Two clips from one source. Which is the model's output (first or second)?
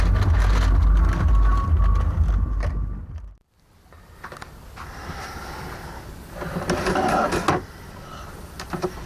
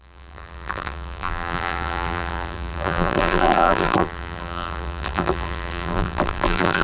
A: second